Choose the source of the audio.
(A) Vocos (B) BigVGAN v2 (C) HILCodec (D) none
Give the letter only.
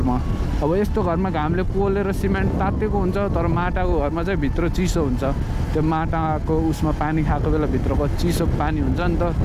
D